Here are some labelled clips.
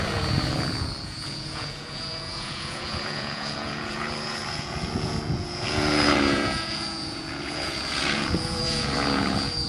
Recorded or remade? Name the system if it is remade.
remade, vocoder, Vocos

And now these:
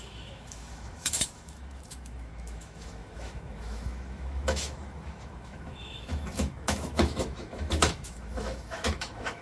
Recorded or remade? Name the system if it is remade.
remade, autoencoder, DAC-VAE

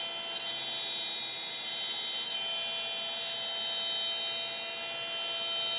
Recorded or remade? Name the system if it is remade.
recorded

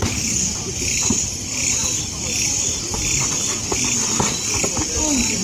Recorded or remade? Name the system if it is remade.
recorded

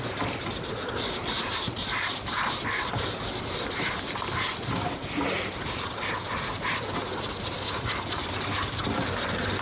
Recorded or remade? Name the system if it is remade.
recorded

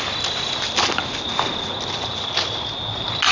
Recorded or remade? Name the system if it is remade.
recorded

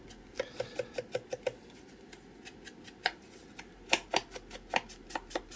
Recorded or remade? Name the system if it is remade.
recorded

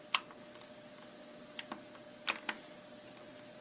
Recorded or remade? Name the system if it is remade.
recorded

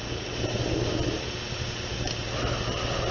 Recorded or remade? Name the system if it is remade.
recorded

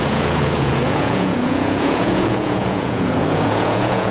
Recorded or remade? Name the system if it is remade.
remade, vocoder, Vocos